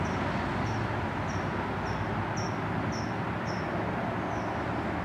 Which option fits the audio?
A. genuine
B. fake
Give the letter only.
A